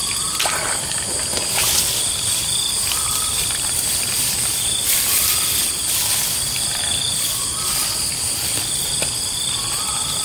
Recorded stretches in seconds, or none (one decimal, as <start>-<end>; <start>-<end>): none